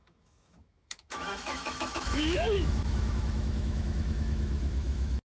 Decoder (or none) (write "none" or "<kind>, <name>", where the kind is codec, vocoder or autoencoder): autoencoder, DAC-VAE